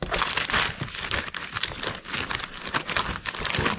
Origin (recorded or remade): recorded